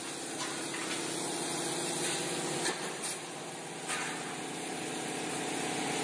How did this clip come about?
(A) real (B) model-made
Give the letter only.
A